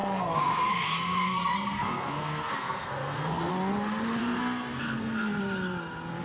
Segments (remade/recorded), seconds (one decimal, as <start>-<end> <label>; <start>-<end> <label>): 0.0-3.5 remade; 3.5-4.2 recorded; 4.2-5.4 remade; 5.4-6.2 recorded